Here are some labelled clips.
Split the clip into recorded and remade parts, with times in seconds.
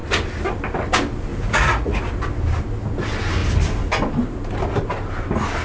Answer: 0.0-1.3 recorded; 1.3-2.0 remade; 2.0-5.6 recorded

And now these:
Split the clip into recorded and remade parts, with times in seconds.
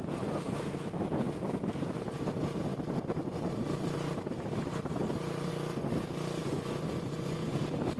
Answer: 0.0-6.4 recorded; 6.4-7.6 remade; 7.6-8.0 recorded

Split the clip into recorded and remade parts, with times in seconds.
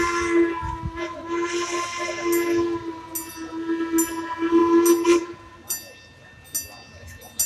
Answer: 0.0-7.5 recorded